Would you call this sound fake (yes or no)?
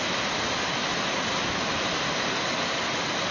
no